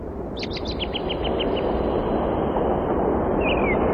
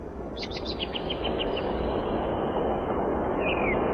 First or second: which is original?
first